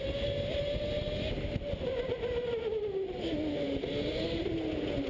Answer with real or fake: real